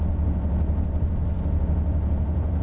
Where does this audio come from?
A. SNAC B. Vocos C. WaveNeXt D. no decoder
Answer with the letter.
D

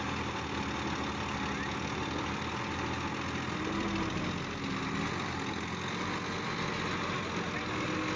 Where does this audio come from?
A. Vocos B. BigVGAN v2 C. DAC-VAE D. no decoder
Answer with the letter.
D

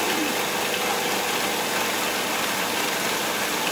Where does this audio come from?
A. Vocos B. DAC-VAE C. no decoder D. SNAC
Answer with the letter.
C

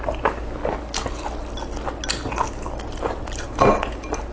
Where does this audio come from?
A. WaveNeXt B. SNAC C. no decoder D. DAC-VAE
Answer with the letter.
C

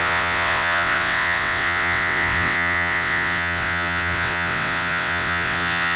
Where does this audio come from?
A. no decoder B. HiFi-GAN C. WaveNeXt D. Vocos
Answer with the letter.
C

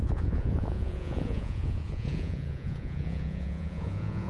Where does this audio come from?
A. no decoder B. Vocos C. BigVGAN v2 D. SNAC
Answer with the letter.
B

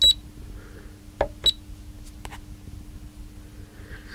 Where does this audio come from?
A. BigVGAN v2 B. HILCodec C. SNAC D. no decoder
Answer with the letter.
D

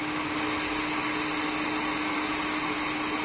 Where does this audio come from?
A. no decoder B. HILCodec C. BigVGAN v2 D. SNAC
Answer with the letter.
A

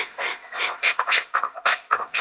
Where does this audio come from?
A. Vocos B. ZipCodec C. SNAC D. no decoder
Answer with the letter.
B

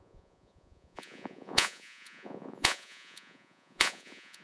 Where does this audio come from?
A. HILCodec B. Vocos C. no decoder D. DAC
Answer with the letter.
B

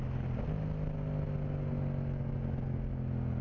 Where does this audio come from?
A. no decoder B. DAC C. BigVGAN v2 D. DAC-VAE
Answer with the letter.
A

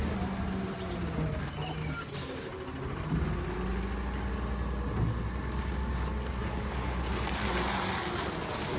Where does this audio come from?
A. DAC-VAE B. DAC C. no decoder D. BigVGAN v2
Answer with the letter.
C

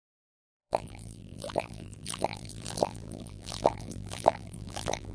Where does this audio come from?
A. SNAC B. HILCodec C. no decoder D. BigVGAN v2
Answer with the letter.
D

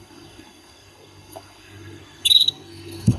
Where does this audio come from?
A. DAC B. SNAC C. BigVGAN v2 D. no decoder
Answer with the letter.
B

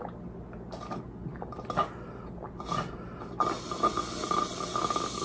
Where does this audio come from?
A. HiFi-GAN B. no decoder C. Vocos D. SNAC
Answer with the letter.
B